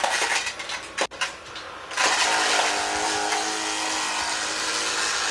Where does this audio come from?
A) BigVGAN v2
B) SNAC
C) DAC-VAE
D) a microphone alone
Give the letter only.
D